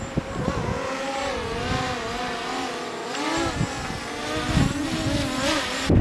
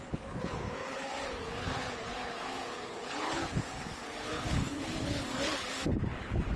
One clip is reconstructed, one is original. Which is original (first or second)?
first